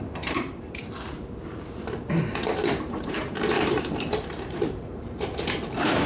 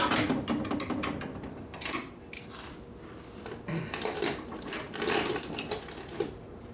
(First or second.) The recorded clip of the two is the second